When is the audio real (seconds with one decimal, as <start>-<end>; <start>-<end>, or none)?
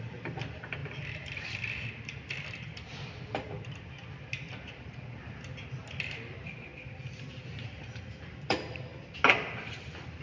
6.7-8.2; 8.9-9.6